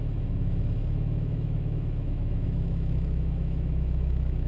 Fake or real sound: fake